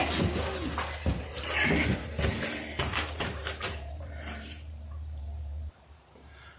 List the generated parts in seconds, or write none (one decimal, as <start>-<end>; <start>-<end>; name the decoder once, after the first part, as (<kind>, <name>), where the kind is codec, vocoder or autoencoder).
2.5-6.6 (vocoder, BigVGAN v2)